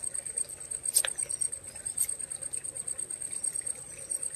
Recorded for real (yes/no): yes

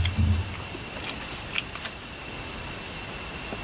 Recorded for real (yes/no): yes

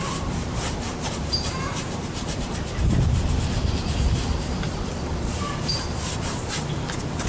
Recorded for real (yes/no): no